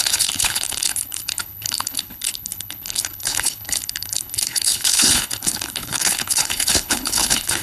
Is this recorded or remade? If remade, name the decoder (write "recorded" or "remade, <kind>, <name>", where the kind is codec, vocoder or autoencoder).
remade, codec, HILCodec